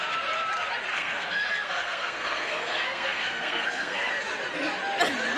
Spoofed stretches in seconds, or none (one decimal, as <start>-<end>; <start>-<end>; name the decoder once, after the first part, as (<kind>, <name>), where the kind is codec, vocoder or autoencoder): 0.9-4.1 (codec, SNAC)